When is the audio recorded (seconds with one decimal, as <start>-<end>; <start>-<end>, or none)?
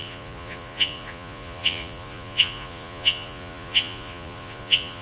none